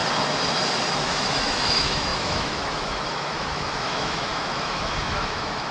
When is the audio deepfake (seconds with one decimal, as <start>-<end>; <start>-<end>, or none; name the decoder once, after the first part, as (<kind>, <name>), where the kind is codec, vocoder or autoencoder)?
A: 1.0-5.7 (autoencoder, DAC-VAE)